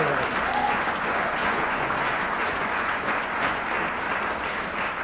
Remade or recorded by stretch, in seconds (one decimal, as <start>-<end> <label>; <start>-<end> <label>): 0.0-0.6 recorded; 0.6-3.6 remade; 3.6-5.0 recorded